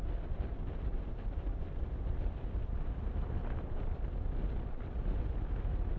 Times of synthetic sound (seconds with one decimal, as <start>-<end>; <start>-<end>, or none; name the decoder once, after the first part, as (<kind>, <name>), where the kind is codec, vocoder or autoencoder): 0.5-4.1 (vocoder, BigVGAN v2)